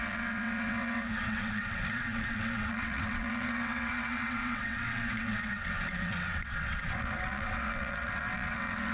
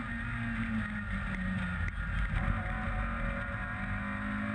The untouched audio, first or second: second